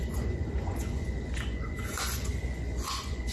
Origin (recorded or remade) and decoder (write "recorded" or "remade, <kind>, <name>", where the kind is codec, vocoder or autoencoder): remade, vocoder, Vocos